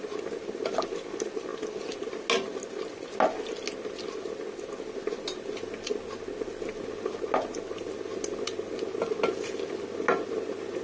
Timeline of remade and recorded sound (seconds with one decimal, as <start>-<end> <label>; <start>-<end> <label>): 0.0-10.8 recorded